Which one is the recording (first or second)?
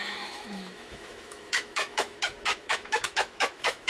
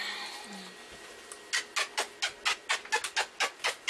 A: second